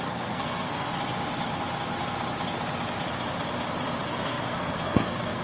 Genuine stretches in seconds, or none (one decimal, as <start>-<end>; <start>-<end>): 0.9-4.1